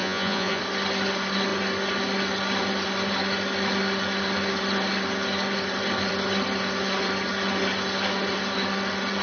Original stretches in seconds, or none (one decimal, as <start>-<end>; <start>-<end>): 0.6-9.2